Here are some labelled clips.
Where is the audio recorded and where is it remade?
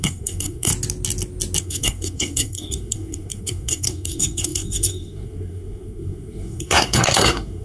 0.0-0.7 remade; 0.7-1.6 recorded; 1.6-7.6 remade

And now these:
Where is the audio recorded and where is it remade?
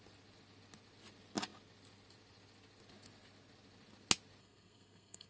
0.0-4.4 recorded; 4.4-5.3 remade